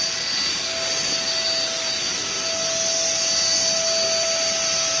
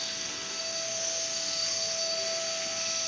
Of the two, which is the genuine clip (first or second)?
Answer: first